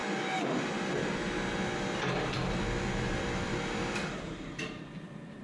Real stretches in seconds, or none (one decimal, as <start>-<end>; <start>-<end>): 0.0-5.4